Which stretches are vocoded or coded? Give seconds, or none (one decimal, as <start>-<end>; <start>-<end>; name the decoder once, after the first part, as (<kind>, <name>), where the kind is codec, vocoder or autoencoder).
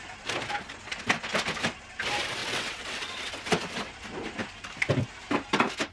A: 2.4-3.3 (vocoder, WaveNeXt)